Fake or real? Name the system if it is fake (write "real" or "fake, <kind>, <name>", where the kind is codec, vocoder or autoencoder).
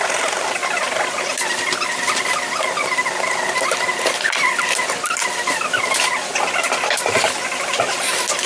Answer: real